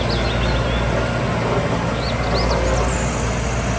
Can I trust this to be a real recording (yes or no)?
yes